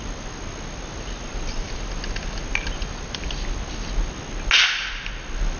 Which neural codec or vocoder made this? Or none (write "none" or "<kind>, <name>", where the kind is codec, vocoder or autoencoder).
none